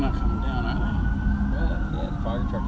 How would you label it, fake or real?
real